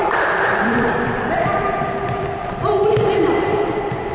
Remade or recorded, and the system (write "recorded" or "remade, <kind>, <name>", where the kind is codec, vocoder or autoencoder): remade, vocoder, BigVGAN v2